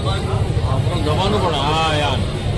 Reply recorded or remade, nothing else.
recorded